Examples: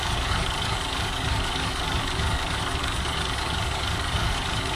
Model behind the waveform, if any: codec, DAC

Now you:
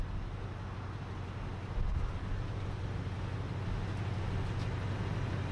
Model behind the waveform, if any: none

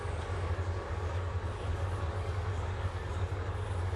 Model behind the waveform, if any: codec, DAC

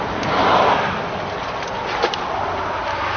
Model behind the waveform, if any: none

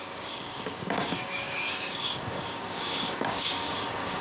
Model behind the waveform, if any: codec, DAC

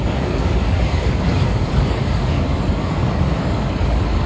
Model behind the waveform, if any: codec, DAC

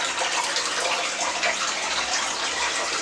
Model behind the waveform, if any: none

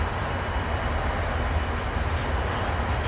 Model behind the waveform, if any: none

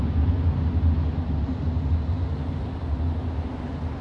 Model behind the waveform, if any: none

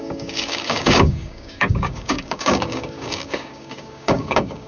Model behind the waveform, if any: codec, DAC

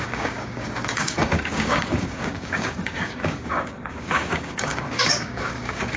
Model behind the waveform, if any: codec, DAC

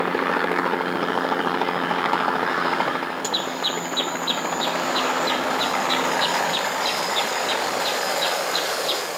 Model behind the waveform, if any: codec, DAC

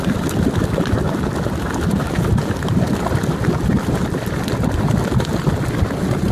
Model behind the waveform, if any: none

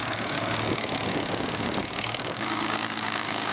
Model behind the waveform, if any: codec, DAC